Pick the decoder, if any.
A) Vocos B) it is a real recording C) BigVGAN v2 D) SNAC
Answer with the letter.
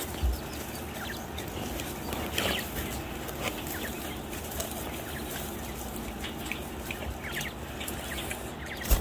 B